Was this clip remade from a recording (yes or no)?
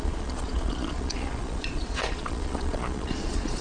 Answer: yes